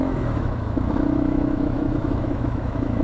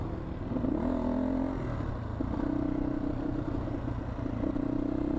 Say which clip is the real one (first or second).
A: second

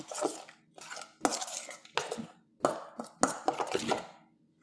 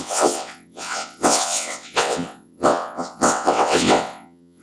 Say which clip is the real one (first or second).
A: first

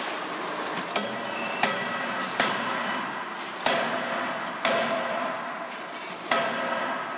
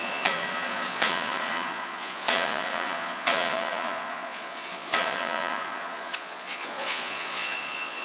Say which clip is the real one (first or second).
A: first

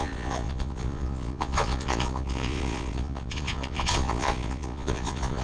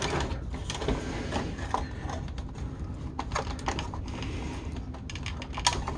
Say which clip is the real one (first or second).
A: second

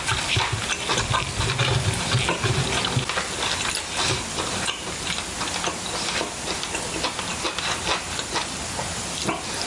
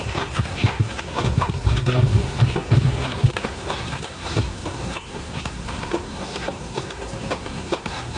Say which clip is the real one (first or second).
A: first